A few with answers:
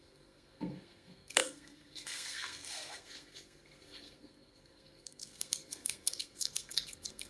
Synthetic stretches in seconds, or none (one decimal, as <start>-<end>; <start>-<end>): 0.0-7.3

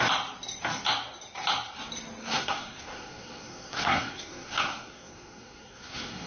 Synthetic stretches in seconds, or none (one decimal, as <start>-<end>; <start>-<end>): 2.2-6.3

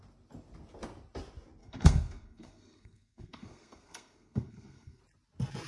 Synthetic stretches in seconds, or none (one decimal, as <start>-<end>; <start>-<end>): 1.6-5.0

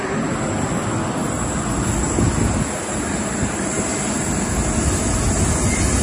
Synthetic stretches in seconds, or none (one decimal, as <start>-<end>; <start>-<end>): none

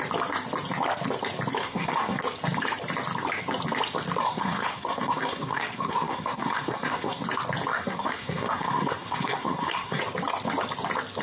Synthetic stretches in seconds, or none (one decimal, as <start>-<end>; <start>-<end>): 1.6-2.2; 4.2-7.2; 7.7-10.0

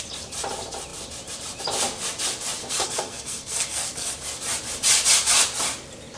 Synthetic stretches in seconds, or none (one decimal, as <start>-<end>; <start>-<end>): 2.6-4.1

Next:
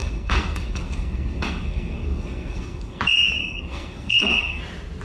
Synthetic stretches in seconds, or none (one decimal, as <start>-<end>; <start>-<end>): 0.0-3.0; 3.4-4.6